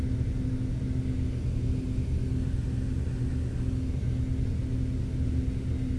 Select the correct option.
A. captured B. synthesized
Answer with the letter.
A